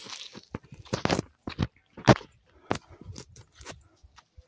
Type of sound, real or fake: real